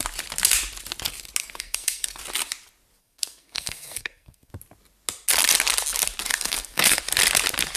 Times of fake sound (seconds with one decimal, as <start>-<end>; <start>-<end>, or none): 1.4-2.2; 3.0-4.5; 6.3-7.0